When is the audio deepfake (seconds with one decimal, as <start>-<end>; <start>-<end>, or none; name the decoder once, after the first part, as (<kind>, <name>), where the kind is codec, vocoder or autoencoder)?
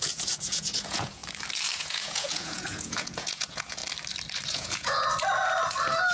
0.0-1.2 (vocoder, Vocos); 1.8-3.8; 4.5-5.1